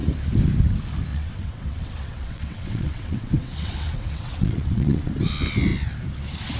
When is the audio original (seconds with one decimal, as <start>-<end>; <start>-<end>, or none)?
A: 0.0-1.1; 5.1-6.6